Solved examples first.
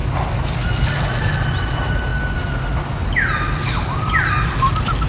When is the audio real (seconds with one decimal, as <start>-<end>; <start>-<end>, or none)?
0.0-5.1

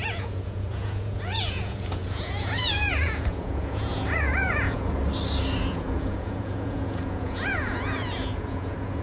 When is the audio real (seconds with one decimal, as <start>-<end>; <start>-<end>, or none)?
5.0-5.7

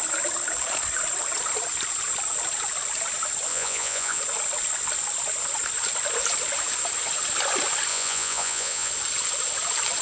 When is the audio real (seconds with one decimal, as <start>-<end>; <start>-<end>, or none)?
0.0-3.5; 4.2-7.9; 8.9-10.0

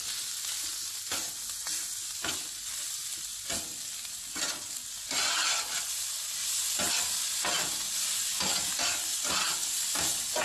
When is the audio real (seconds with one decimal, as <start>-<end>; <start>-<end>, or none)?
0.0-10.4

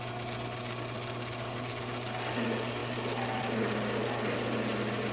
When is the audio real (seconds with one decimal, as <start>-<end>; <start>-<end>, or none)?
0.0-5.1